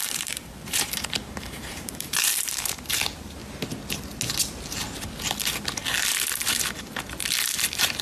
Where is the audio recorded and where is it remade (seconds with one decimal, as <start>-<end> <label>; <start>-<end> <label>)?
0.0-3.4 remade; 3.4-7.5 recorded; 7.5-8.0 remade